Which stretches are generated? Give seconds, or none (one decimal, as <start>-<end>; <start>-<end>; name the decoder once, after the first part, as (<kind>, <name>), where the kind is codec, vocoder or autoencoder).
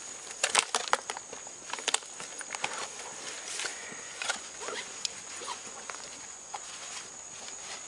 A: 3.7-6.9 (vocoder, Vocos)